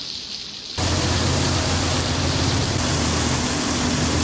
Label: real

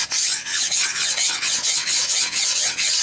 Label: fake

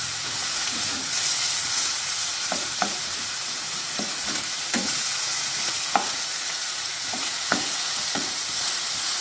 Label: fake